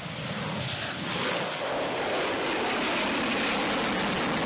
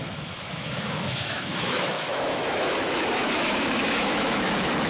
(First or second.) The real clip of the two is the first